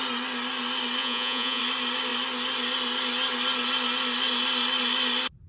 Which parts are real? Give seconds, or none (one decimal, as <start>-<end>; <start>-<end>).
0.0-1.0; 1.6-5.5